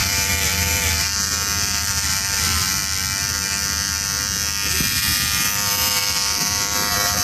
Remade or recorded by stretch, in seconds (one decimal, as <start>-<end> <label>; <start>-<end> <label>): 0.0-2.8 remade; 2.8-4.7 recorded; 4.7-7.2 remade